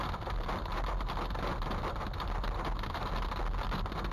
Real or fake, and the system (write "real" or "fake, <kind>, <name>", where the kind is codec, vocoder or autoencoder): real